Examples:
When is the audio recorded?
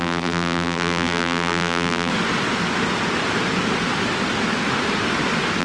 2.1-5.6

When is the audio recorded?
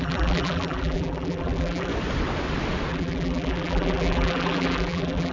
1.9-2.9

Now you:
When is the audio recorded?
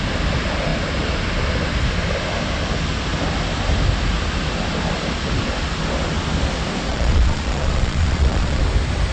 0.0-6.9; 8.6-9.1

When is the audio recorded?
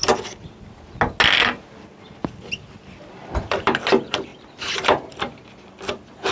0.0-3.5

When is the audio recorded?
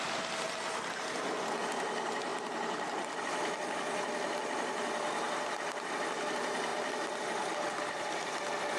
0.0-8.8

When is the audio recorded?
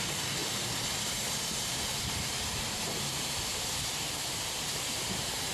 none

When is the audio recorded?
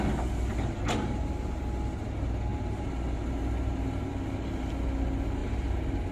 0.0-0.5; 1.6-2.5; 4.7-5.4